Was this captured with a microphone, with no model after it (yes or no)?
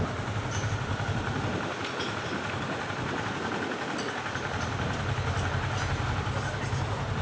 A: yes